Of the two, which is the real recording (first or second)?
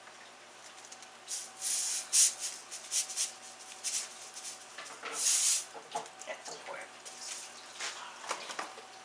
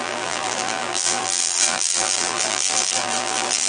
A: first